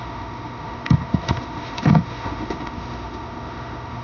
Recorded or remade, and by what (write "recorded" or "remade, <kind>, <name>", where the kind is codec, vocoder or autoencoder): remade, autoencoder, DAC-VAE